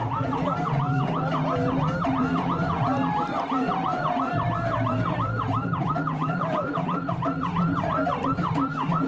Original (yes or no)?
no